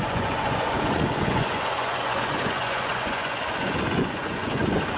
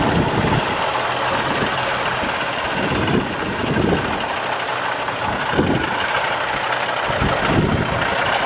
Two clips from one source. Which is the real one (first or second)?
second